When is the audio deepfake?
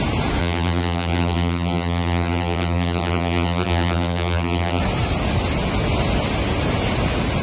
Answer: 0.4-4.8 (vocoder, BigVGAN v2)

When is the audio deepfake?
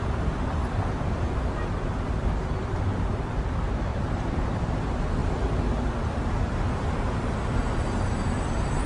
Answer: 3.9-4.6 (vocoder, BigVGAN v2)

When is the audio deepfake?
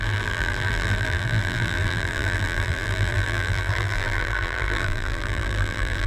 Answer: 0.0-6.1 (vocoder, BigVGAN v2)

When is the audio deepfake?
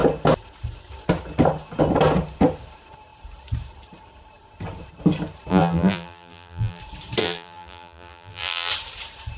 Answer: 5.5-6.8 (vocoder, BigVGAN v2); 7.2-8.7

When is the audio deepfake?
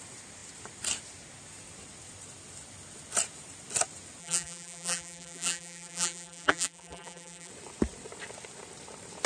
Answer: 4.2-7.5 (vocoder, BigVGAN v2)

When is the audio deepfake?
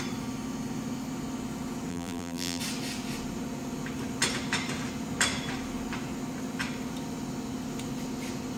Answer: 1.9-2.6 (vocoder, BigVGAN v2)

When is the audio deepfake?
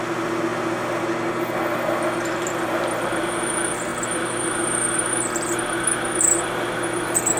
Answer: none